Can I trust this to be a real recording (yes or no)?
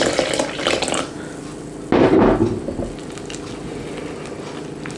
yes